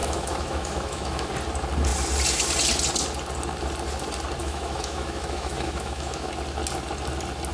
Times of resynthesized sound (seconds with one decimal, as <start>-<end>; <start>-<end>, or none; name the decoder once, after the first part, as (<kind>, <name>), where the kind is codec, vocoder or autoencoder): 0.0-1.3 (autoencoder, DAC-VAE); 4.4-6.3